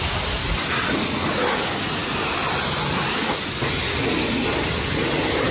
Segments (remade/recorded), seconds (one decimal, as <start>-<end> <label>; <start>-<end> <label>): 0.0-5.5 recorded